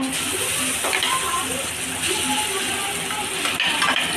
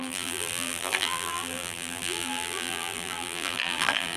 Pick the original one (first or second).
first